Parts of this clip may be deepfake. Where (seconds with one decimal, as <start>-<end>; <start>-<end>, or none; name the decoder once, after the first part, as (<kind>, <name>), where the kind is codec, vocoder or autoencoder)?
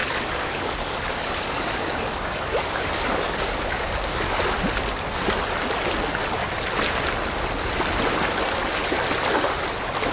0.0-4.4 (codec, DAC)